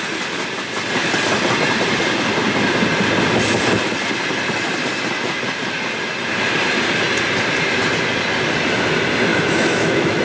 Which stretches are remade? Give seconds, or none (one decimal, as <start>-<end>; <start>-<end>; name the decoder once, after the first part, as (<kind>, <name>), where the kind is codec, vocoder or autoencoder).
9.3-10.2 (autoencoder, DAC-VAE)